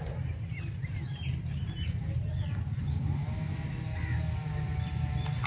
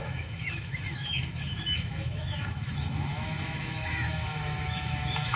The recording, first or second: first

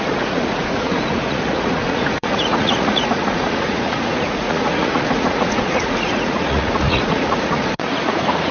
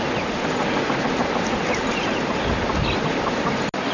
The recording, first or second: second